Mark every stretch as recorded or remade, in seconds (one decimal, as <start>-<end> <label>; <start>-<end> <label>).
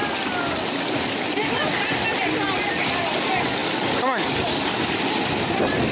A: 0.0-5.9 recorded